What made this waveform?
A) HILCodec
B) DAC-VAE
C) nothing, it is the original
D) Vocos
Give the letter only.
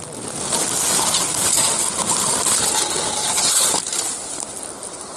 C